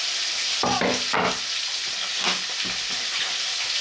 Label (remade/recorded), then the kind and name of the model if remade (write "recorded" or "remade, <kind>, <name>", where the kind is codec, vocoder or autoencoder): recorded